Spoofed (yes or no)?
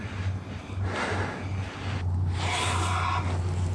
no